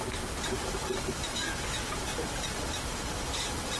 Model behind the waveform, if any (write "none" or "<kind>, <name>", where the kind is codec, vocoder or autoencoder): none